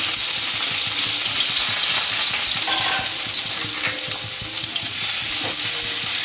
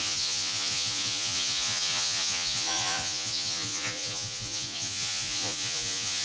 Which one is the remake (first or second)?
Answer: second